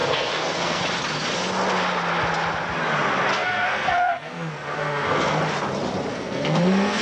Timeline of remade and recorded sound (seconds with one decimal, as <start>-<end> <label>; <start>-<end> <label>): 0.0-0.8 remade; 0.8-3.3 recorded; 3.3-5.4 remade; 5.4-6.1 recorded; 6.1-7.0 remade